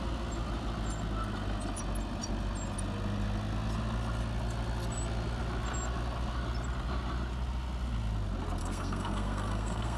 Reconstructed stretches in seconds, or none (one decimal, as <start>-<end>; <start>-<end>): 8.6-10.0

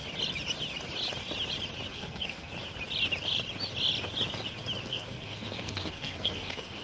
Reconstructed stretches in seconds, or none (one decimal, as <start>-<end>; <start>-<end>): 1.9-2.5; 4.9-6.8

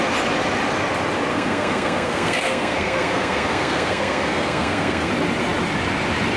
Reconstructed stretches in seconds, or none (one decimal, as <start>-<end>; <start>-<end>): 1.3-5.1

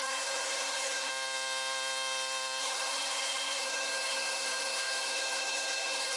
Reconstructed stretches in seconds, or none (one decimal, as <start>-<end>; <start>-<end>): 0.0-1.1; 2.6-6.2